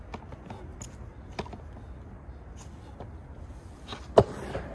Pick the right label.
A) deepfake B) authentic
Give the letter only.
B